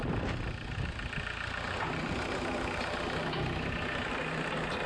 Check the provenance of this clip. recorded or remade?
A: recorded